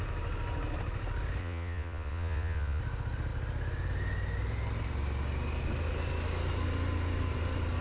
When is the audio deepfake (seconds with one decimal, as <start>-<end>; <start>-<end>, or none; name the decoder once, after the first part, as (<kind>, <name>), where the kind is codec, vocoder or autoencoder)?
1.4-2.8 (vocoder, Vocos)